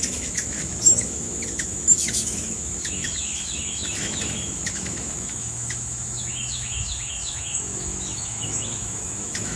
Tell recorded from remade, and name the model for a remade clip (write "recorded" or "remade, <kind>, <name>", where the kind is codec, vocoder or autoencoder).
remade, autoencoder, DAC-VAE